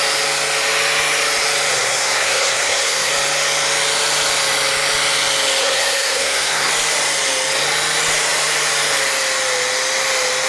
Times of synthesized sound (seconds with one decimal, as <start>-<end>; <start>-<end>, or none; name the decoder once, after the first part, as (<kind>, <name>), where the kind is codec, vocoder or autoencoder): 1.7-3.1 (codec, SNAC); 5.6-6.7